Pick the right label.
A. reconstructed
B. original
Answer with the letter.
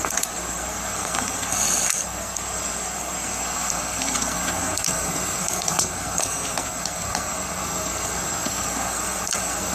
A